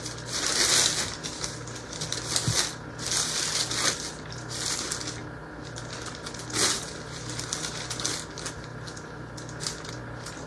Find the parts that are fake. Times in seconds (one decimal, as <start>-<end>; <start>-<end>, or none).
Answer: none